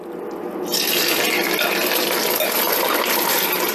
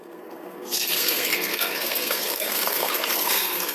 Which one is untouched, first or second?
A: first